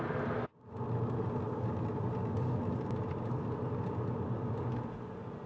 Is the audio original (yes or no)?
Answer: yes